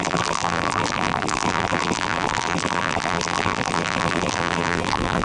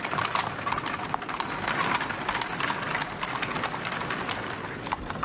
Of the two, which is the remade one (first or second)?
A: first